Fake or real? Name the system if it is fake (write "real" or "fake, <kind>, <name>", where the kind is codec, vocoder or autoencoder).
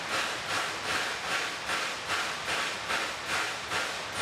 real